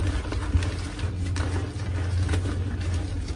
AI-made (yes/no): no